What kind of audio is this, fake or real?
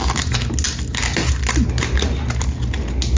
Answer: real